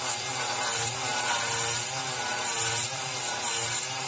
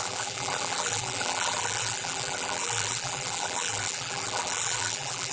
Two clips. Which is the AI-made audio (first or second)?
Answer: second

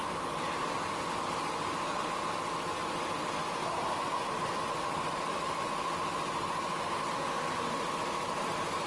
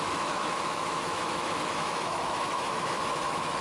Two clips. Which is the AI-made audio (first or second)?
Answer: second